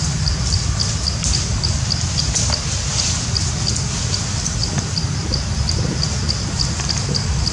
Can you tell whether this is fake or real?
real